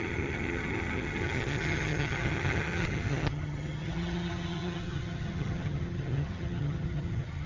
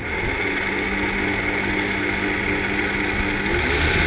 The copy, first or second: first